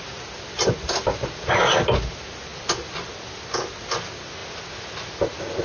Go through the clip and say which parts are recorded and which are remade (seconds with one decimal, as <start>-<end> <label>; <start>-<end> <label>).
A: 0.0-5.6 recorded